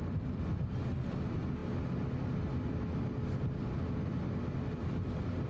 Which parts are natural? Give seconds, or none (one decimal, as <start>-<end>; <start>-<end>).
0.0-5.5